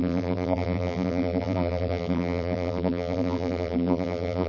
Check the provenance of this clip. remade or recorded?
remade